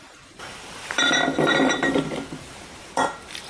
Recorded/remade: remade